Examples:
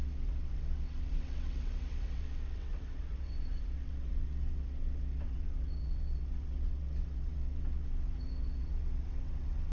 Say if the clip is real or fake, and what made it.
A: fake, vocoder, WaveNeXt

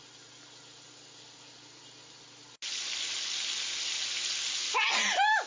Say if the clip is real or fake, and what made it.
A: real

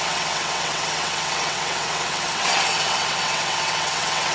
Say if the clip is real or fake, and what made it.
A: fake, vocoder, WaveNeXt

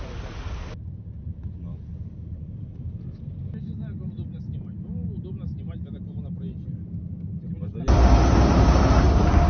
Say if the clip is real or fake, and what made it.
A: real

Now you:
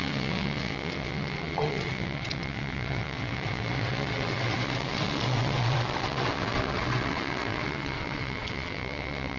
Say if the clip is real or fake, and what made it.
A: fake, vocoder, WaveNeXt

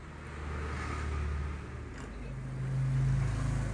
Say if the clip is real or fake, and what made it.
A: real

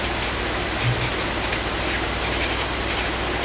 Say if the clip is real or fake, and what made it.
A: real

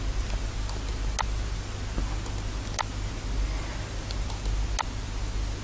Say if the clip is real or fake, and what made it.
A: real